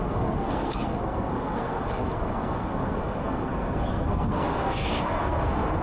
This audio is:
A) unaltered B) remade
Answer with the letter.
B